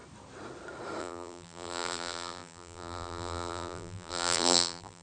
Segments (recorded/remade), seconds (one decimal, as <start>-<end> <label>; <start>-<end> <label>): 0.0-1.0 recorded; 1.0-5.0 remade